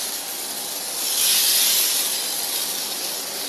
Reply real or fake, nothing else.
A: real